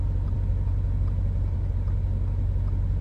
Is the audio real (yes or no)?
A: no